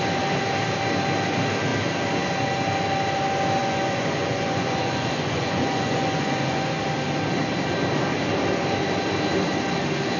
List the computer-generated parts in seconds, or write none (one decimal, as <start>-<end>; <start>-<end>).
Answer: 3.6-6.8